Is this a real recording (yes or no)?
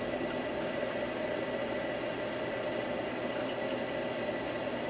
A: yes